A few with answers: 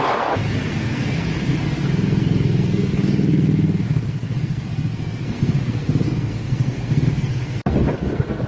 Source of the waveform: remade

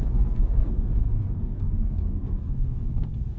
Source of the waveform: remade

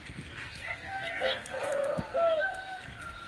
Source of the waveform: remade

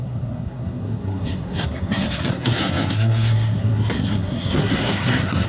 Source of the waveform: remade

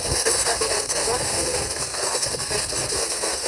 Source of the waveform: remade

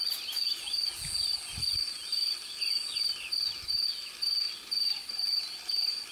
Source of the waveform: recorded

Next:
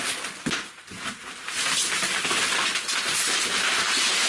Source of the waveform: recorded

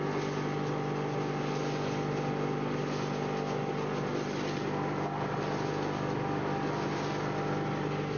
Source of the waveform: recorded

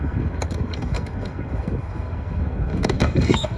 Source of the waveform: remade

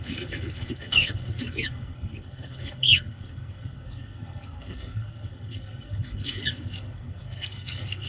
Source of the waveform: remade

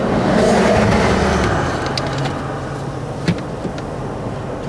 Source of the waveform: recorded